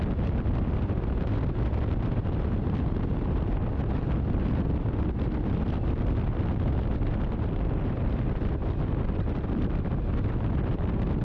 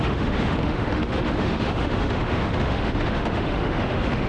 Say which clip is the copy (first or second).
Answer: second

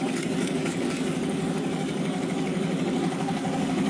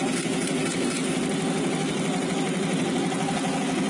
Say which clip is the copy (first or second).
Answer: first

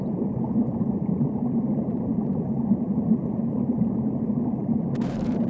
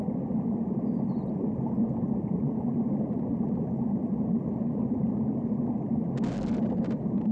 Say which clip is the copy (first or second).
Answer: first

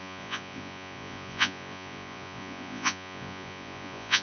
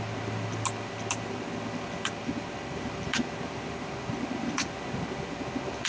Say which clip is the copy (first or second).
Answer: first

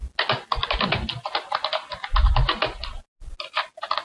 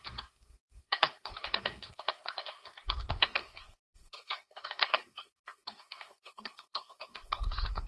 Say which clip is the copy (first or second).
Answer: second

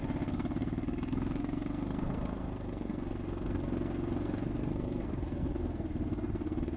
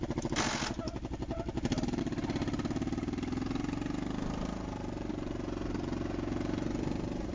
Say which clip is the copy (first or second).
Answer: first